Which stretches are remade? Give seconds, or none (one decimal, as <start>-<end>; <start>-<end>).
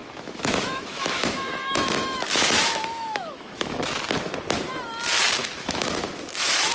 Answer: 0.0-4.0; 5.4-6.7